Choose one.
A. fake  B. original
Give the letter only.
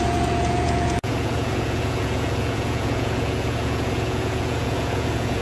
A